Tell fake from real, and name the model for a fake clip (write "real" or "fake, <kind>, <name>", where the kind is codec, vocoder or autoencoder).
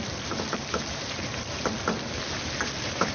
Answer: real